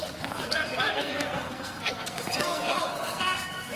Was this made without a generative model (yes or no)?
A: no